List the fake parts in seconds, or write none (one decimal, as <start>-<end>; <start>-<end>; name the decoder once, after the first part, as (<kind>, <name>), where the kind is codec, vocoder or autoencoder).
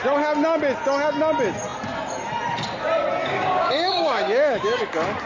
3.2-4.8 (codec, DAC)